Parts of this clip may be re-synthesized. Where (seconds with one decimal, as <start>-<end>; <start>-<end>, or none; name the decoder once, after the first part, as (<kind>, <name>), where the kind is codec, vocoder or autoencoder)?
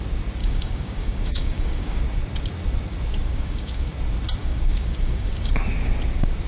0.4-2.0 (codec, DAC); 3.2-3.9; 4.4-5.5